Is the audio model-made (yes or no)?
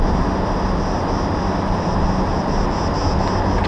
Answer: no